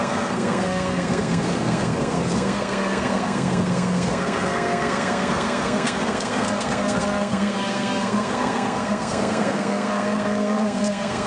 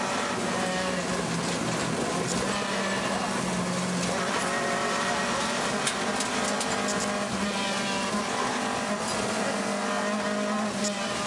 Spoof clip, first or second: first